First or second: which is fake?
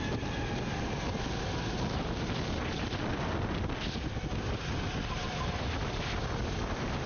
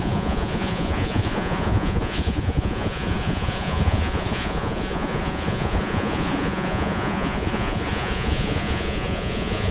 second